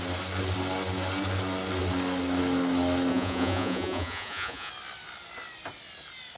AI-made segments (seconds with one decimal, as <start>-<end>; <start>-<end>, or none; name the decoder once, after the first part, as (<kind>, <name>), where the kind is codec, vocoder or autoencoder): 3.1-4.7 (vocoder, Vocos)